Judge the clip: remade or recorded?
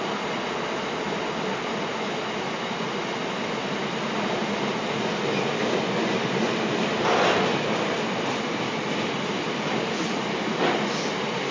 recorded